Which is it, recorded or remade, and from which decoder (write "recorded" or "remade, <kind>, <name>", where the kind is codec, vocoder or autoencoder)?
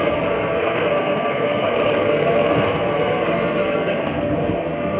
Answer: remade, codec, SNAC